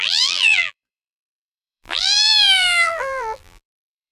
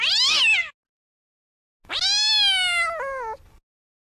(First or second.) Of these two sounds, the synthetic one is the first